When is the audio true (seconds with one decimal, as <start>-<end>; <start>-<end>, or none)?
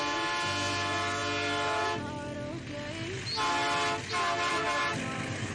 0.0-5.5